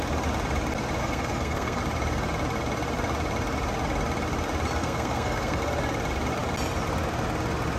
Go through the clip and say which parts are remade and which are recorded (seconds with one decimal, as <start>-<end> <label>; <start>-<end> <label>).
0.0-1.0 recorded; 1.0-1.8 remade; 1.8-4.8 recorded; 4.8-5.6 remade; 5.6-7.8 recorded

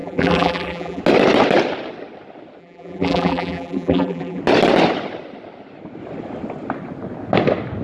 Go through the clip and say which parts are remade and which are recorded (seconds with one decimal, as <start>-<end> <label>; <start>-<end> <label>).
0.0-1.0 remade; 1.0-2.6 recorded; 2.6-4.4 remade; 4.4-7.8 recorded

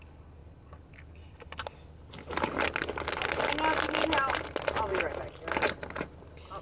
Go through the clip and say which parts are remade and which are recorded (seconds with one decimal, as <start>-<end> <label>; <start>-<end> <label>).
0.0-6.6 recorded

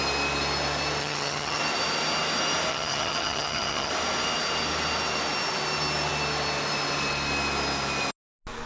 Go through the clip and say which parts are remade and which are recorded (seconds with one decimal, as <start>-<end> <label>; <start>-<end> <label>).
0.0-1.0 recorded; 1.0-1.6 remade; 1.6-2.7 recorded; 2.7-3.9 remade; 3.9-8.7 recorded

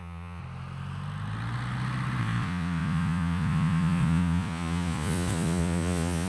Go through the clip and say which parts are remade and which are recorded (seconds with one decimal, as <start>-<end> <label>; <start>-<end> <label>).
0.0-0.4 remade; 0.4-2.2 recorded; 2.2-6.3 remade

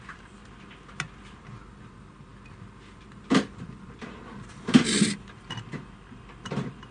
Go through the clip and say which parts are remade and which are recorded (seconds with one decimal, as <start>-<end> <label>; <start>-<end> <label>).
0.0-0.4 remade; 0.4-1.7 recorded; 1.7-6.9 remade

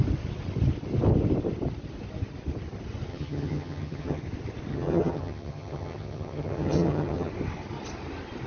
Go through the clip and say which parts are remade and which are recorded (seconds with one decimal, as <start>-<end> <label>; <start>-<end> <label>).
0.0-3.1 recorded; 3.1-4.2 remade; 4.2-4.7 recorded; 4.7-7.3 remade; 7.3-8.5 recorded